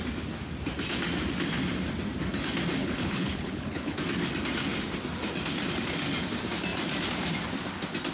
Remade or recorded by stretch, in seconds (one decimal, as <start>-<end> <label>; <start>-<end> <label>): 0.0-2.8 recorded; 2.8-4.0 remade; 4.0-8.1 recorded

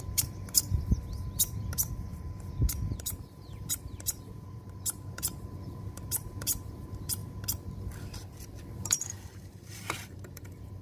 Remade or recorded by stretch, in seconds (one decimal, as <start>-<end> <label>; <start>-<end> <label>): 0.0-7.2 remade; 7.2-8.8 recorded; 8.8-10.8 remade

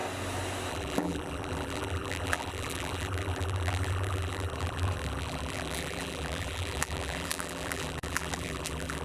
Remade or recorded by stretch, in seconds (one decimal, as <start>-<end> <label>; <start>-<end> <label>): 0.0-0.7 recorded; 0.7-9.0 remade

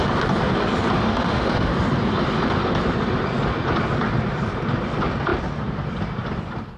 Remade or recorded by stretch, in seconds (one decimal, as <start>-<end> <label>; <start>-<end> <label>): 0.0-1.1 recorded; 1.1-1.7 remade; 1.7-6.8 recorded

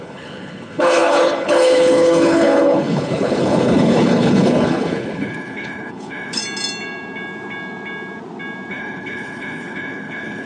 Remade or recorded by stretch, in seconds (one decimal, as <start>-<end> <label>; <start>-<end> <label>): 0.0-6.4 remade; 6.4-8.7 recorded; 8.7-10.5 remade

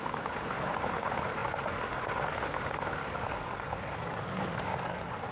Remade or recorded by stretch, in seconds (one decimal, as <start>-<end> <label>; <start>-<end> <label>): 0.0-3.0 recorded; 3.0-4.3 remade; 4.3-4.7 recorded; 4.7-5.3 remade

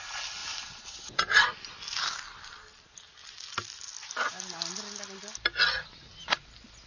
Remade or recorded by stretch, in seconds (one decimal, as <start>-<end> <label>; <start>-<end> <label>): 0.0-6.9 recorded